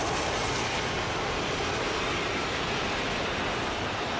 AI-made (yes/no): no